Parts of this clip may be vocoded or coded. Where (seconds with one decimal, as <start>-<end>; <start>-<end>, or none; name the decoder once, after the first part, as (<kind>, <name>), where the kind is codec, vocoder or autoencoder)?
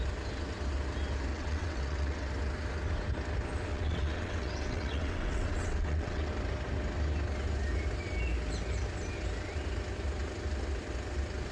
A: 1.3-2.3 (vocoder, WaveNeXt); 3.7-6.3